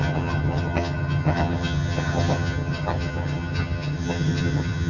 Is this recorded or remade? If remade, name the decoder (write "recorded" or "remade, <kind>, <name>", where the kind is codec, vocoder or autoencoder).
remade, vocoder, HiFi-GAN